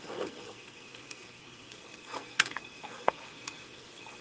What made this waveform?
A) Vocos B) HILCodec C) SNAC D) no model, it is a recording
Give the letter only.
C